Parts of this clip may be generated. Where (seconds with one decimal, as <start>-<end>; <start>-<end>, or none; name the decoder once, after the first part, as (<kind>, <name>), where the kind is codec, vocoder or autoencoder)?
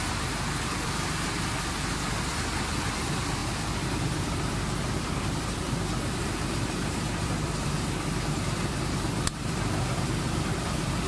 0.6-11.1 (vocoder, BigVGAN v2)